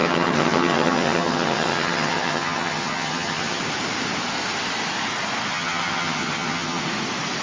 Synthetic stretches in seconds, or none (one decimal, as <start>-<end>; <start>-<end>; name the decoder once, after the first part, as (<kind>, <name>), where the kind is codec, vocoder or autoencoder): 0.0-3.6 (vocoder, HiFi-GAN); 5.5-6.8